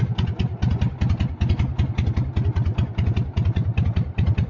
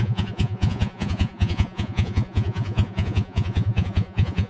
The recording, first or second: first